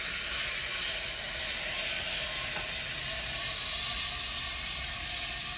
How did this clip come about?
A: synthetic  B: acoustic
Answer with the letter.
B